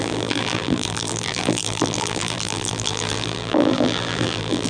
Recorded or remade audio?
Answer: remade